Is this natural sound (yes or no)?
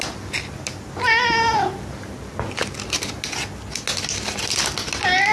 yes